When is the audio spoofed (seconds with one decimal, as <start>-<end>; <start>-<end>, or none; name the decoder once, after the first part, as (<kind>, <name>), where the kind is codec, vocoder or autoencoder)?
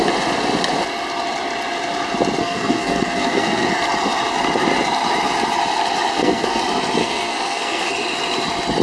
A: 2.4-3.7 (codec, SNAC); 6.1-6.6; 7.0-7.9